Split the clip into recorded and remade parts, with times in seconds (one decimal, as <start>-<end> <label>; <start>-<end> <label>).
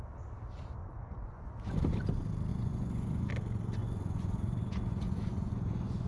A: 0.0-0.8 recorded; 0.8-1.5 remade; 1.5-2.5 recorded; 2.5-3.3 remade; 3.3-3.8 recorded; 3.8-6.1 remade